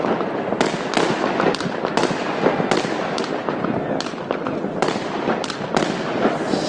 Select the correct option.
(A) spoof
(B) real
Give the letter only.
B